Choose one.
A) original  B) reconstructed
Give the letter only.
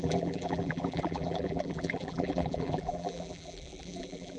B